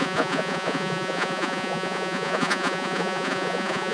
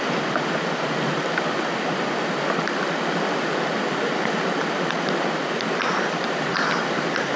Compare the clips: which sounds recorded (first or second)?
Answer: second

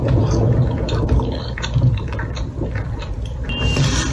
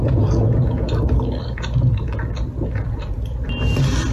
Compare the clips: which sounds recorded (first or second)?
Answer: second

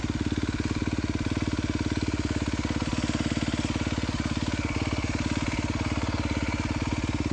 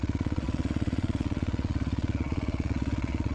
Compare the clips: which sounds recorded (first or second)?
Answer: first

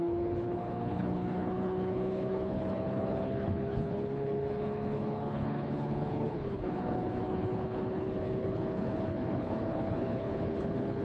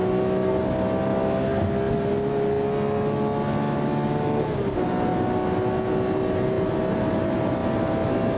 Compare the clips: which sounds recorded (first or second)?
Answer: second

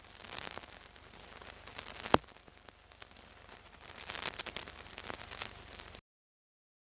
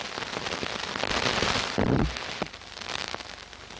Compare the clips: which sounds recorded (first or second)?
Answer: second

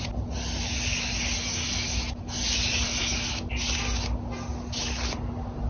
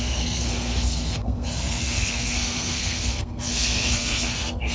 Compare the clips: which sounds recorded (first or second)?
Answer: first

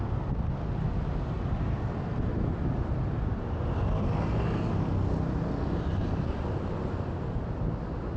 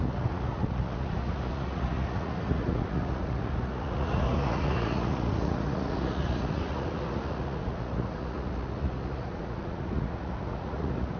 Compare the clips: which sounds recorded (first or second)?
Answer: first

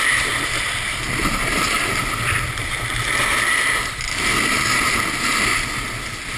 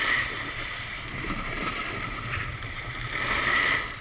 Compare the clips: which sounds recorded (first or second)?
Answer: first